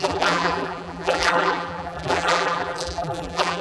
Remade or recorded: remade